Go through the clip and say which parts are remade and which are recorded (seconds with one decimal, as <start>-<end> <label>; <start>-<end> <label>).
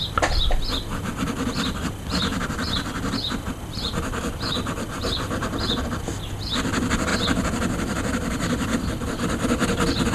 0.0-10.1 recorded